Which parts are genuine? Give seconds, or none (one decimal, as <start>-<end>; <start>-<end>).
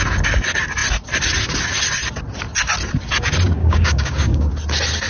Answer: 0.0-3.6; 4.5-5.1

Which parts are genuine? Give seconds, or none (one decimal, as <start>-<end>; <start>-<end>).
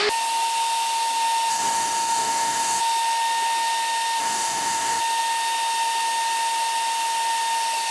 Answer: 0.0-1.5; 2.8-4.2; 5.0-7.9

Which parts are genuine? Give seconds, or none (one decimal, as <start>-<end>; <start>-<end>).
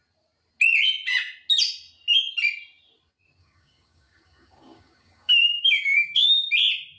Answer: 0.0-3.4; 6.5-7.0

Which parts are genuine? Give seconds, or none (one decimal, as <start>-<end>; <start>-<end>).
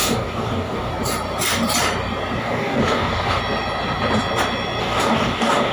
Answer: 0.9-2.4; 3.4-4.8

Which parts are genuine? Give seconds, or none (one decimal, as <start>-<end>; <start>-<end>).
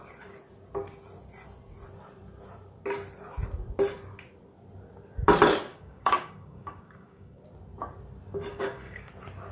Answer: 0.0-5.7; 7.4-8.5; 9.1-9.5